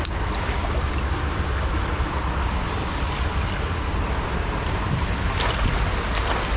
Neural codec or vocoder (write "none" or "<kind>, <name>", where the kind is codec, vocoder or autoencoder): none